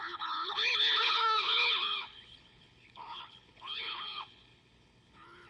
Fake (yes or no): yes